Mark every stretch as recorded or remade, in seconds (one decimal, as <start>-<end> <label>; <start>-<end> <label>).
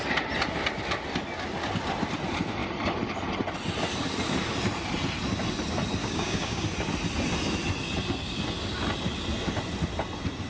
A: 0.0-6.0 recorded; 6.0-6.6 remade; 6.6-10.5 recorded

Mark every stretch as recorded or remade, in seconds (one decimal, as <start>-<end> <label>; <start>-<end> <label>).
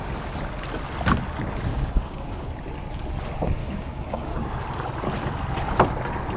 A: 0.0-1.7 recorded; 1.7-2.5 remade; 2.5-3.6 recorded; 3.6-4.6 remade; 4.6-6.4 recorded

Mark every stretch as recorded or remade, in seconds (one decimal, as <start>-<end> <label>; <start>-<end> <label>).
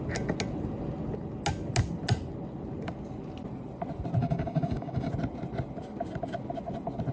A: 0.0-4.2 recorded; 4.2-5.1 remade; 5.1-7.1 recorded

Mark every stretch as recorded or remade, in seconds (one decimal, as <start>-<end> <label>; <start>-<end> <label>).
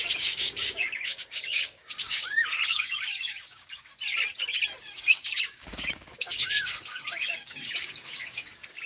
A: 0.0-3.9 remade; 3.9-4.8 recorded; 4.8-8.9 remade